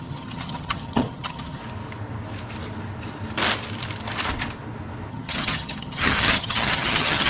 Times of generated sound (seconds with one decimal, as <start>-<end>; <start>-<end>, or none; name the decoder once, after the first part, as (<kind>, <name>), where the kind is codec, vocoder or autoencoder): 0.0-1.6 (vocoder, HiFi-GAN); 5.1-7.3